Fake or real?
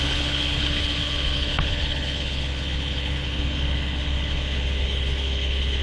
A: fake